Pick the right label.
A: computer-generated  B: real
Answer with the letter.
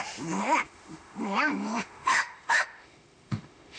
A